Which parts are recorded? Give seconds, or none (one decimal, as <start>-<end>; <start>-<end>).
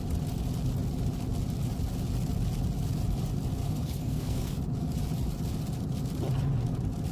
0.0-3.6; 4.6-7.1